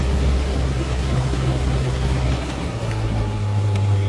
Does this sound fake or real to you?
fake